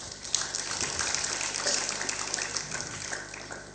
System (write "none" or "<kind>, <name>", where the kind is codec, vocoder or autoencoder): none